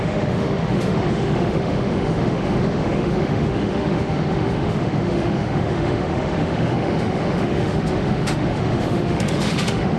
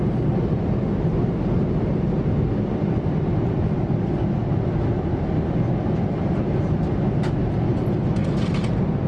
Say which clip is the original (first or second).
second